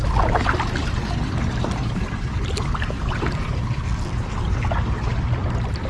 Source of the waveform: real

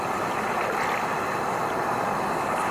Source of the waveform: real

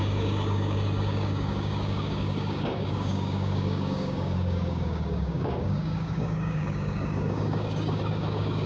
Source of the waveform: fake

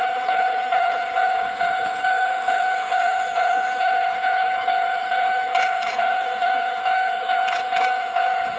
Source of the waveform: fake